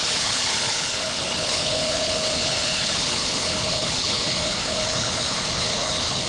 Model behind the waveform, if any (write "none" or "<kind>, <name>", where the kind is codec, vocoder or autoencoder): codec, HILCodec